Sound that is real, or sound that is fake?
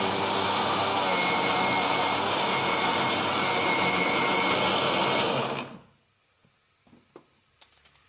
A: real